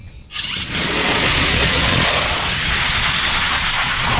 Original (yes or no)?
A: no